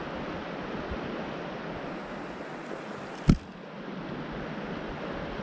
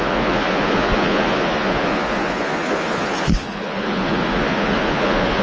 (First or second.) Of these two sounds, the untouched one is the first